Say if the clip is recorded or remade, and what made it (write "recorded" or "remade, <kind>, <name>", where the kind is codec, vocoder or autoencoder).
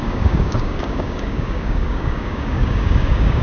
remade, codec, DAC